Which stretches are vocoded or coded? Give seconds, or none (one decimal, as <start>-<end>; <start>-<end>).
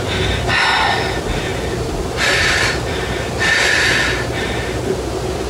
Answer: none